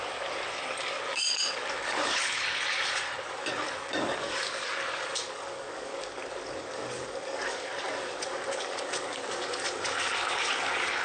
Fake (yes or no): yes